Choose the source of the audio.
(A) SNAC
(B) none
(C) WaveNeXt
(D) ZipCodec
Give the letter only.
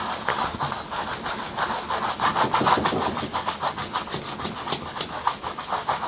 B